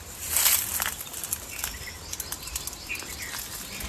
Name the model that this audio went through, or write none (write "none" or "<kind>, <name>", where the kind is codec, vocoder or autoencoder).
none